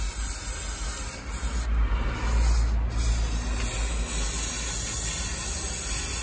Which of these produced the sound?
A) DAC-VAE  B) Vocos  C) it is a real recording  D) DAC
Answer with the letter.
C